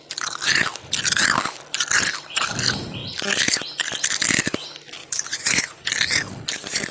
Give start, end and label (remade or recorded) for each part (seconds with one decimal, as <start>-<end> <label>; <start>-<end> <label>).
0.0-5.0 recorded; 5.0-5.9 remade; 5.9-6.9 recorded